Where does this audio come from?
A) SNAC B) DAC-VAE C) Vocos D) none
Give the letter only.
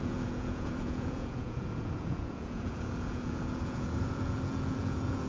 C